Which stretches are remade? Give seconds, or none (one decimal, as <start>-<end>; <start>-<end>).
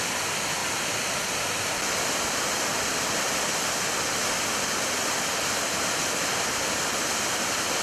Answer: none